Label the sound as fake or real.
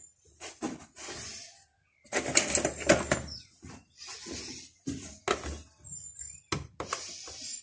real